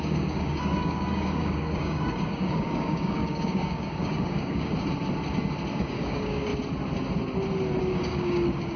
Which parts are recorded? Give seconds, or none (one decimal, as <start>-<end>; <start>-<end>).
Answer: 4.7-5.7; 6.5-7.8